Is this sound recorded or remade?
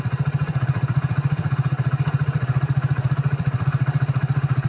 remade